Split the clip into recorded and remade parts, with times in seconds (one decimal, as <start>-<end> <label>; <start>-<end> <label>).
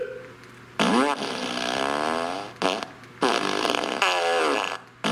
0.0-5.1 recorded